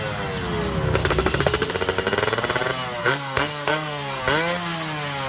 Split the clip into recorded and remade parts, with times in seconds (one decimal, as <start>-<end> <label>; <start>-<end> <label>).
0.0-1.0 recorded; 1.0-1.7 remade; 1.7-3.0 recorded; 3.0-4.2 remade; 4.2-5.3 recorded